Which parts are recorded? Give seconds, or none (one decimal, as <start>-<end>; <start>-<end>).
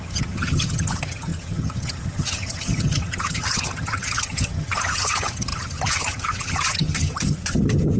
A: none